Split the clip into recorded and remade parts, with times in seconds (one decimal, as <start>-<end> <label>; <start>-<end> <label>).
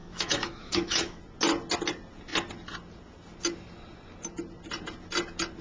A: 0.0-1.2 remade; 1.2-5.6 recorded